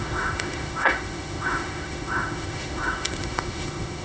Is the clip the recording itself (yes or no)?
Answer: no